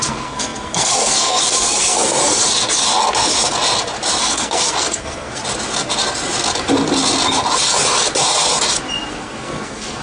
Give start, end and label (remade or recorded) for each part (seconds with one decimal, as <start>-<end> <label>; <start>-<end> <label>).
0.0-2.2 remade; 2.2-4.2 recorded; 4.2-5.4 remade; 5.4-9.1 recorded; 9.1-10.0 remade